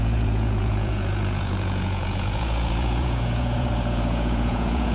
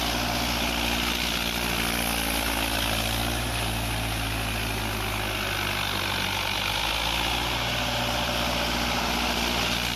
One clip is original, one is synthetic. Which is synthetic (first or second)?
first